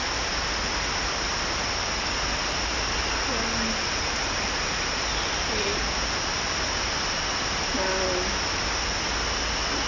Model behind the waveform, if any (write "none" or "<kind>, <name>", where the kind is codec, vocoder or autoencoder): none